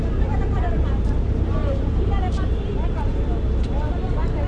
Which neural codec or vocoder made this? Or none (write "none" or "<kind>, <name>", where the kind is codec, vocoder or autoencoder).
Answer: vocoder, BigVGAN v2